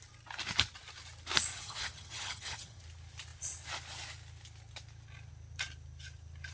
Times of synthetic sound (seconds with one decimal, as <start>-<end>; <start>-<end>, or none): 1.5-2.8